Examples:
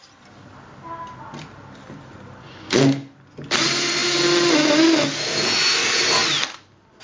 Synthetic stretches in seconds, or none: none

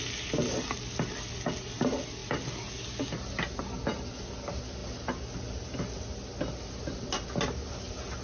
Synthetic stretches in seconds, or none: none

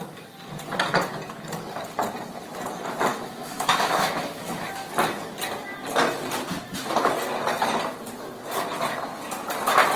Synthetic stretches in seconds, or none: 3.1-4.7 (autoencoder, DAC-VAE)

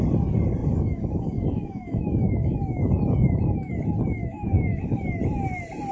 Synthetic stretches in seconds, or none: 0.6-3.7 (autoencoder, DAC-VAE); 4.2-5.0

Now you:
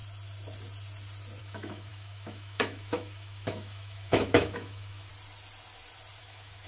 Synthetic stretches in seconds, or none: 1.4-5.1 (autoencoder, DAC-VAE); 6.2-6.7

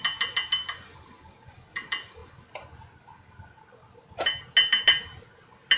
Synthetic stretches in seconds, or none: none

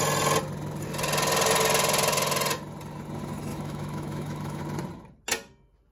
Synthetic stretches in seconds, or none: 3.5-4.6 (autoencoder, DAC-VAE)